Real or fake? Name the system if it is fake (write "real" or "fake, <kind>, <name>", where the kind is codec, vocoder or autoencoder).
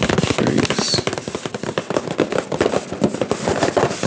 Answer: real